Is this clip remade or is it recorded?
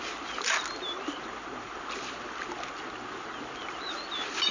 recorded